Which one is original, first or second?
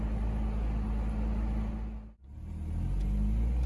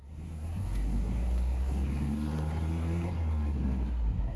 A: first